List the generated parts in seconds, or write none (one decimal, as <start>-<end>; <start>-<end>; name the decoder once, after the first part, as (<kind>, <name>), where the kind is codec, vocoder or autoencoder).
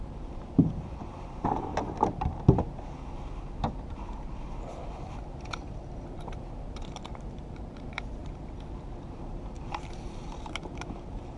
0.0-1.7 (vocoder, BigVGAN v2); 5.5-8.2; 9.2-11.4